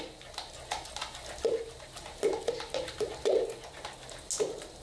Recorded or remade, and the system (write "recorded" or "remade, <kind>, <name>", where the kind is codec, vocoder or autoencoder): recorded